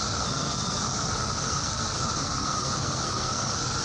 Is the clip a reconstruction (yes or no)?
yes